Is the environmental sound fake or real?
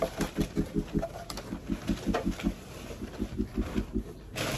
real